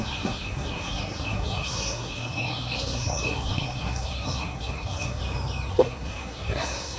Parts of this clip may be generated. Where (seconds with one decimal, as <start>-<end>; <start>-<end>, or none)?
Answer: 0.0-5.2; 5.7-7.0